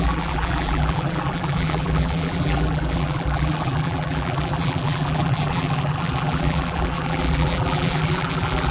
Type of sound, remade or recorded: remade